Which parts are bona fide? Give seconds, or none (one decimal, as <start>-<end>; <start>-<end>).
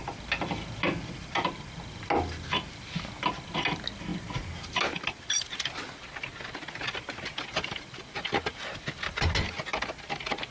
0.0-10.5